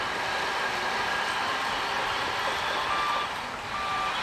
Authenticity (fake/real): real